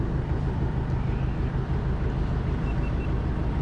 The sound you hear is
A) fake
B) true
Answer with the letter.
B